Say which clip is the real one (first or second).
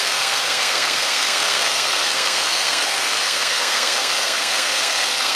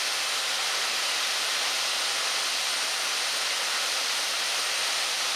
second